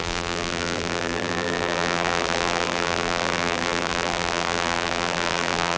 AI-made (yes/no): yes